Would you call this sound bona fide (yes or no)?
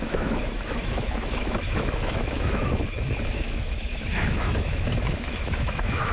no